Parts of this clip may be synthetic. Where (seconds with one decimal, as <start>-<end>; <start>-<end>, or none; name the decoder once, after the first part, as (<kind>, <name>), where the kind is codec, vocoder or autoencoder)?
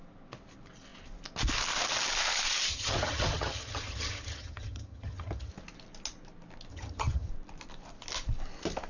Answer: 2.7-5.5 (vocoder, HiFi-GAN); 6.7-7.3